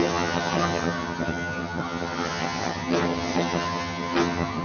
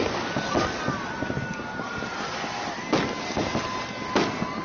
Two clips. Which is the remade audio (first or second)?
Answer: first